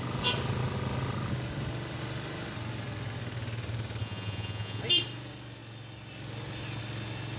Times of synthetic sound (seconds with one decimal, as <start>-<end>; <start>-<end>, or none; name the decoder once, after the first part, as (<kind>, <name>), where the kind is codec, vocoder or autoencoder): 4.0-4.8 (vocoder, Vocos)